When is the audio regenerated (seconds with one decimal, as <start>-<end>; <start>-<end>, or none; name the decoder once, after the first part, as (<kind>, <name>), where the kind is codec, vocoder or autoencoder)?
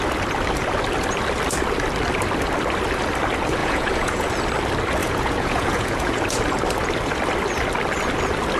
3.6-4.3 (vocoder, Vocos); 5.0-6.2